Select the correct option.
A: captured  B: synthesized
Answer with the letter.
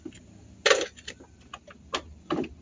A